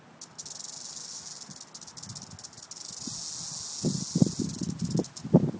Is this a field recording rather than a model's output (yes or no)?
yes